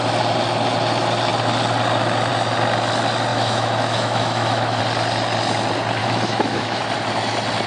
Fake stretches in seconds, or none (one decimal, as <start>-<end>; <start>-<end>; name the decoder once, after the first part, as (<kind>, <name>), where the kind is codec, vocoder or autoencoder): 3.3-4.8 (autoencoder, DAC-VAE); 6.0-6.8